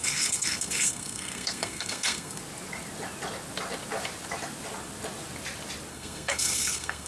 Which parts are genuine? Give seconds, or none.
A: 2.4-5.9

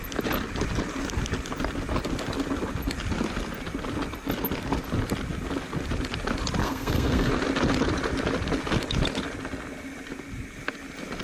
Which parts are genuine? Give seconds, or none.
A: 0.0-6.6; 7.3-11.2

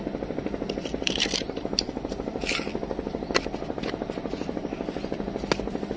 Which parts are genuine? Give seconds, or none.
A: 0.0-0.9; 2.1-6.0

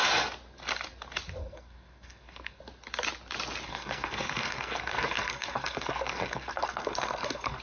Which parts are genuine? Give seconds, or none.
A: 0.0-1.4; 2.6-3.7

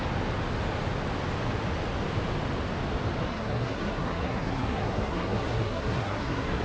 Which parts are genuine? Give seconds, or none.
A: 0.0-3.2

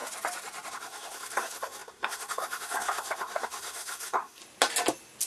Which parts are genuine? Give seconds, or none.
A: 0.0-0.7; 4.4-5.3

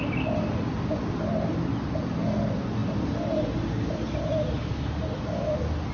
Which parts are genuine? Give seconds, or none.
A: 0.0-4.6; 5.4-5.9

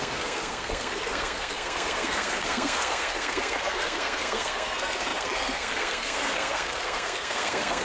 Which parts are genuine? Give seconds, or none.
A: none